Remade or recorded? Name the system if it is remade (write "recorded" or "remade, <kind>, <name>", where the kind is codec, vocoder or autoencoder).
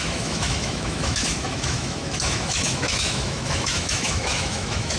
remade, autoencoder, DAC-VAE